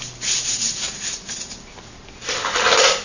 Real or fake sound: real